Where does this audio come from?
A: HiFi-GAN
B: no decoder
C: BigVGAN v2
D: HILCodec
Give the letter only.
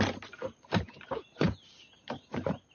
B